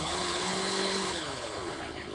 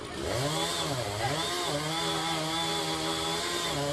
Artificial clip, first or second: first